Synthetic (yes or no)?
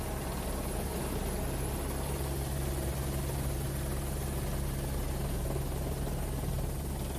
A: no